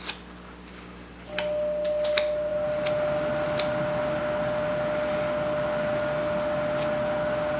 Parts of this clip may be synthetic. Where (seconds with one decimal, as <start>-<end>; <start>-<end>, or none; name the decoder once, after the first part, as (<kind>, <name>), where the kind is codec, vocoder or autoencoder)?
none